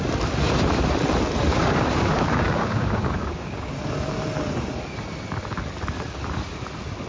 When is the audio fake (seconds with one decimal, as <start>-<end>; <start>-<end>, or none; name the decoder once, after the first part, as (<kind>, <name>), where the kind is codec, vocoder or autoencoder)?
1.5-3.7 (codec, DAC)